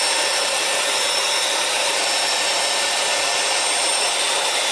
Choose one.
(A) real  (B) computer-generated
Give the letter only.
B